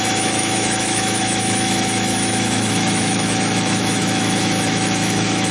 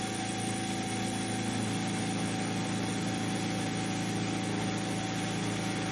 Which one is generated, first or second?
first